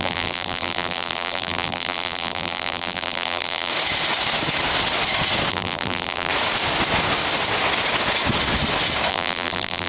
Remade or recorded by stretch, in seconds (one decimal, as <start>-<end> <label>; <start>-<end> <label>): 0.0-3.7 remade; 3.7-5.5 recorded; 5.5-6.3 remade; 6.3-9.1 recorded; 9.1-9.9 remade